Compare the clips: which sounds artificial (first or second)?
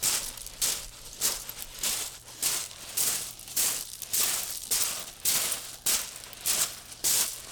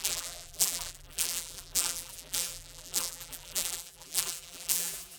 second